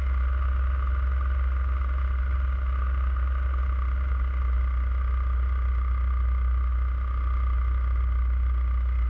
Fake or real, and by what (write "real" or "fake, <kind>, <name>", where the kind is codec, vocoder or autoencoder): real